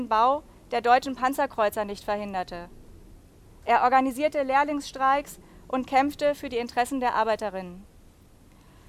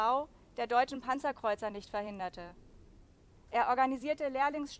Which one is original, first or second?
first